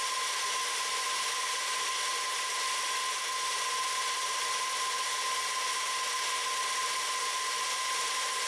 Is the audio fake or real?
real